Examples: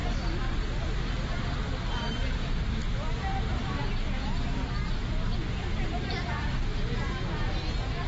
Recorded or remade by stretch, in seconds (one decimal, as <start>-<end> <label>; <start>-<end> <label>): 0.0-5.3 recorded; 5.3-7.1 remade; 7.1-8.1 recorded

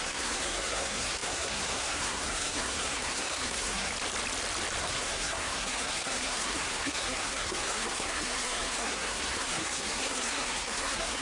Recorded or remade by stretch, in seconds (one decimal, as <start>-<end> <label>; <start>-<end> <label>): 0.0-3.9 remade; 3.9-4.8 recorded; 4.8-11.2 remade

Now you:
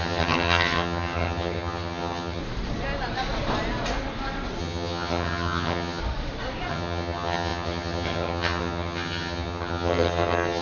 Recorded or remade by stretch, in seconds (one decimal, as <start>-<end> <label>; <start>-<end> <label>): 0.0-2.4 remade; 2.4-4.6 recorded; 4.6-6.0 remade; 6.0-6.7 recorded; 6.7-10.6 remade